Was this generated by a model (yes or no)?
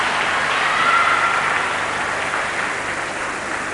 no